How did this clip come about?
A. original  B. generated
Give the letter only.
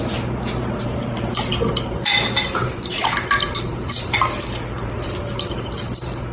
B